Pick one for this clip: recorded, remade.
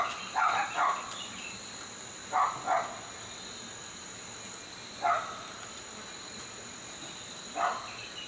recorded